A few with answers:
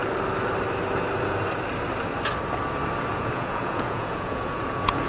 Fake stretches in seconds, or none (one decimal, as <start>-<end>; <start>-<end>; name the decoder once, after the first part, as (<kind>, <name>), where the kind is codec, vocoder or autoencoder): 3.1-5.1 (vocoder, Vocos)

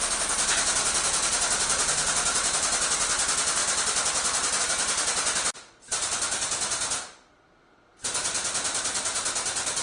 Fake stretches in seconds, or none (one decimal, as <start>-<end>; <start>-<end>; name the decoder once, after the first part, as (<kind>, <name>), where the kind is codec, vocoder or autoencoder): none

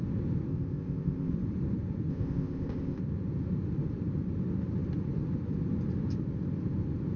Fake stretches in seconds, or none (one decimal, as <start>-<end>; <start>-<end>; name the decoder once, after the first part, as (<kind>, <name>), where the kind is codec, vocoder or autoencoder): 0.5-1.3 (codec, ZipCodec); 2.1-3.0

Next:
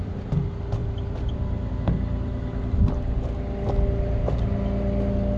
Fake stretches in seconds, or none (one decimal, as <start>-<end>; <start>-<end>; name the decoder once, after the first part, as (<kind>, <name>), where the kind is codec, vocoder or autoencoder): 0.8-1.7 (vocoder, BigVGAN v2)

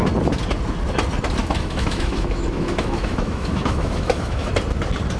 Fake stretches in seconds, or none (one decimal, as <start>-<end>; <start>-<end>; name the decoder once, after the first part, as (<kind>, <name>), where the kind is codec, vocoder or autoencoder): 1.4-4.5 (autoencoder, DAC-VAE)